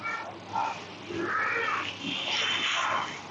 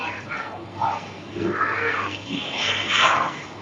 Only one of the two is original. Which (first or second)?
first